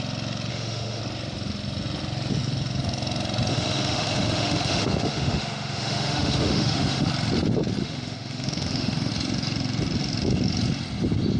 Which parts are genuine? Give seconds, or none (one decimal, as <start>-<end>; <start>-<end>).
0.0-0.5; 1.0-3.5; 7.1-7.8; 9.1-11.4